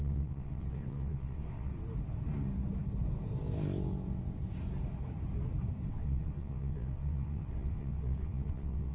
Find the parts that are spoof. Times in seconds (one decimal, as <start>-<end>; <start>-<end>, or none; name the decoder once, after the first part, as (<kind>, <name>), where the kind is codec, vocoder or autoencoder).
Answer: 0.0-1.7 (vocoder, WaveNeXt); 5.9-8.9